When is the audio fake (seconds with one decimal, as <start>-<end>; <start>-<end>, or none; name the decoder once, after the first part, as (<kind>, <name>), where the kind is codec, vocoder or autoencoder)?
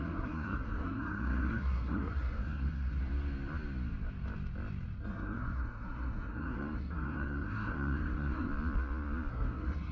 0.0-3.0 (codec, SNAC); 5.0-8.5; 9.3-9.9